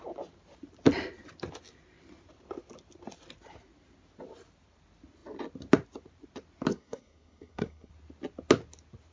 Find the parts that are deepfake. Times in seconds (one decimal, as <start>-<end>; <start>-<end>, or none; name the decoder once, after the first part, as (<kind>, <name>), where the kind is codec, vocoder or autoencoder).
6.7-7.9 (codec, SNAC)